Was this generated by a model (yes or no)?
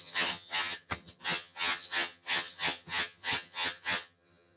yes